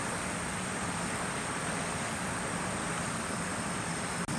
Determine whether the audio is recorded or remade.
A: recorded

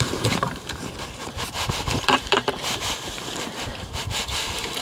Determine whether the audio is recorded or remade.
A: remade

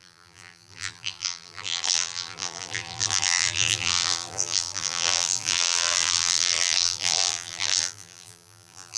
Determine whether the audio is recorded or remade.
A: remade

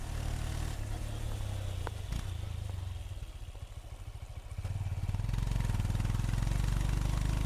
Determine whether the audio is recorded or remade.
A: recorded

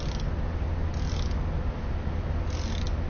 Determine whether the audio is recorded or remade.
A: recorded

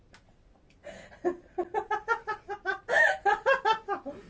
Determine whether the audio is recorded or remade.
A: recorded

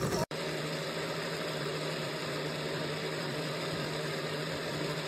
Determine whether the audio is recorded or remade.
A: remade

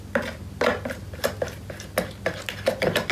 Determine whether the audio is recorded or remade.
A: recorded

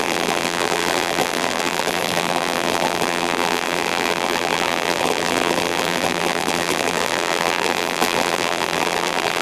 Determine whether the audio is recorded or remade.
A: remade